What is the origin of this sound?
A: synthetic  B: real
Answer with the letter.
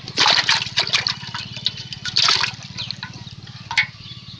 B